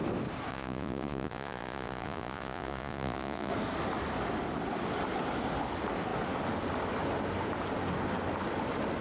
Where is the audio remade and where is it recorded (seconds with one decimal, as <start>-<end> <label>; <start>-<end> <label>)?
0.0-0.5 recorded; 0.5-3.5 remade; 3.5-9.0 recorded